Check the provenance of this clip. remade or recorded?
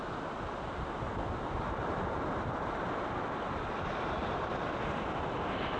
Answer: recorded